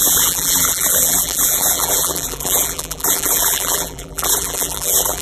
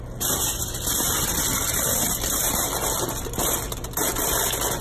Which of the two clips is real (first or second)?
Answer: second